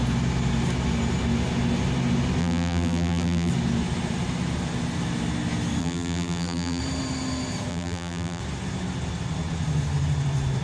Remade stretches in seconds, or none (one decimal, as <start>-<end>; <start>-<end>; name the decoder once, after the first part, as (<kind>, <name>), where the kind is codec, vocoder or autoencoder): 2.4-3.5 (vocoder, BigVGAN v2); 5.8-6.8; 7.7-8.4